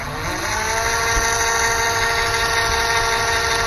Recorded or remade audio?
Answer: recorded